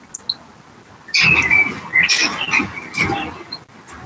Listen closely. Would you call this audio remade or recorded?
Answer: recorded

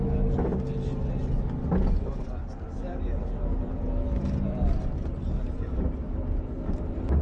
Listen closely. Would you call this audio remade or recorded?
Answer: recorded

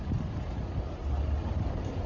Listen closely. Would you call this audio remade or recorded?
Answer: remade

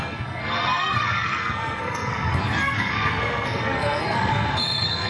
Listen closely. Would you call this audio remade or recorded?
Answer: remade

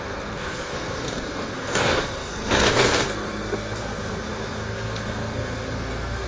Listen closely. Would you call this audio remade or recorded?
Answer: remade